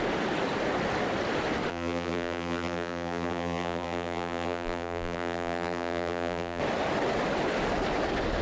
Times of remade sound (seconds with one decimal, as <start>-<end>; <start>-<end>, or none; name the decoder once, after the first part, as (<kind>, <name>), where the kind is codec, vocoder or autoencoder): 1.7-6.6 (vocoder, BigVGAN v2)